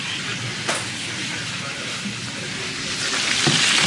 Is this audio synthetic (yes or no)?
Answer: no